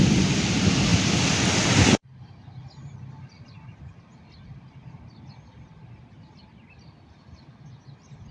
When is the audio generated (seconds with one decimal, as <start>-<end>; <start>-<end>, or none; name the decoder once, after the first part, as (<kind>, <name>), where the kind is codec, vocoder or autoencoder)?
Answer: 0.9-5.9 (vocoder, BigVGAN v2)